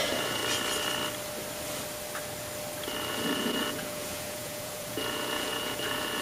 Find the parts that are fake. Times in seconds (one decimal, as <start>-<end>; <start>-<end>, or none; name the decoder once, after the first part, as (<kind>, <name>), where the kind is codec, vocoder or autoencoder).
0.0-0.4 (vocoder, Vocos); 3.1-6.2